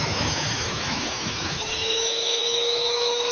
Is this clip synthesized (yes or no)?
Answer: yes